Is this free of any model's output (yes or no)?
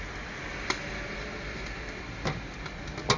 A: yes